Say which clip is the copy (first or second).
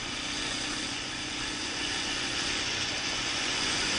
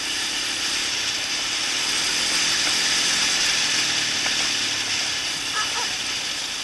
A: first